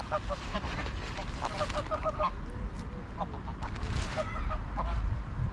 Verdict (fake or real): real